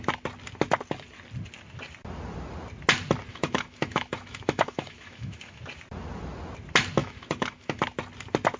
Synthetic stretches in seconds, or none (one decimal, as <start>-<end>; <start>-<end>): 3.3-5.6; 7.0-7.8